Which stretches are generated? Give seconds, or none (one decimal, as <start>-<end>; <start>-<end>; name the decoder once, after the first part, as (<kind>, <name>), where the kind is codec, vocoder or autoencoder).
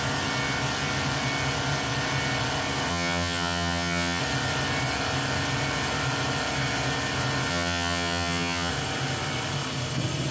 2.9-4.2 (vocoder, HiFi-GAN); 7.5-8.7